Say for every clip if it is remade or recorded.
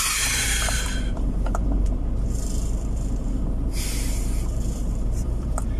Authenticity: remade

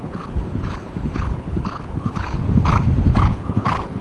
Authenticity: remade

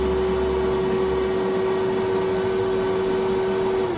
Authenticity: recorded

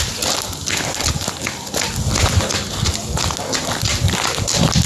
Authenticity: recorded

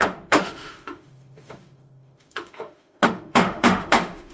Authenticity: remade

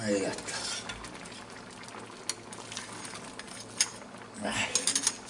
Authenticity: recorded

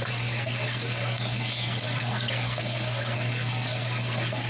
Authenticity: remade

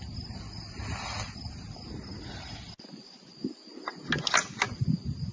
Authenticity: recorded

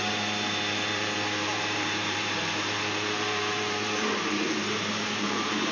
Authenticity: remade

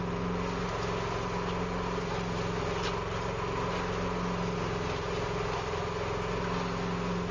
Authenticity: recorded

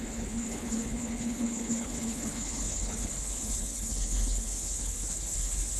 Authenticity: remade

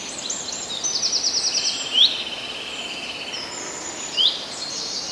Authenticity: recorded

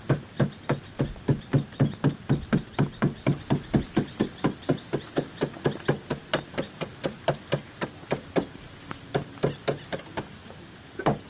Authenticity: recorded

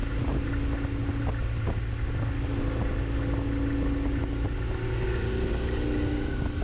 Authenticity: recorded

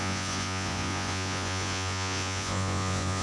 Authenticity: remade